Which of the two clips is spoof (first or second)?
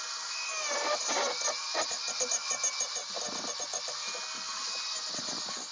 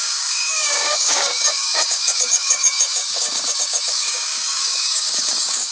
second